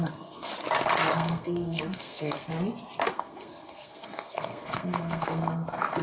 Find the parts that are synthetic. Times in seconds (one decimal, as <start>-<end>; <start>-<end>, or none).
0.0-0.5; 1.1-2.5; 3.1-6.0